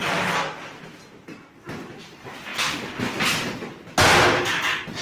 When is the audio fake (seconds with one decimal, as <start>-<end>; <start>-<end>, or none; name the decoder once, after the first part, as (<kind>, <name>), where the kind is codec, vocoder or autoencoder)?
0.0-1.0 (vocoder, BigVGAN v2)